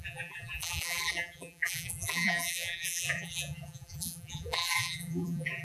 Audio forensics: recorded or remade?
remade